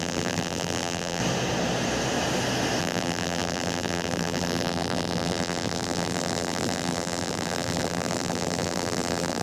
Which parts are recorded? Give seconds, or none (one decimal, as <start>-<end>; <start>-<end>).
1.2-2.8